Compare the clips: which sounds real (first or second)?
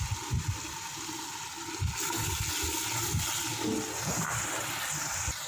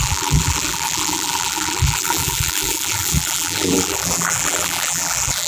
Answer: first